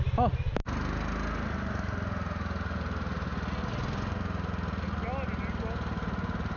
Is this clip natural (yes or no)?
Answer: yes